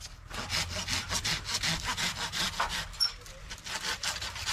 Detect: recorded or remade recorded